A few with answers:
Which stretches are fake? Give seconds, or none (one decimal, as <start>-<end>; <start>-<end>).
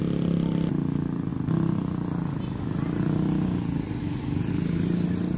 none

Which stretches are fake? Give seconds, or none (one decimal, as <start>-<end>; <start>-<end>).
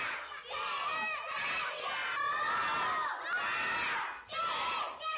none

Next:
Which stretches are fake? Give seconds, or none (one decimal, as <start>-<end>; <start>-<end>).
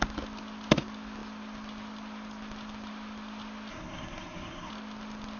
3.7-4.7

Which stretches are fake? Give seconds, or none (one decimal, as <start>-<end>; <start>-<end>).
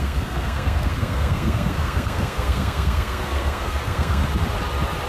0.0-4.2